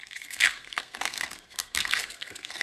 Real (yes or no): no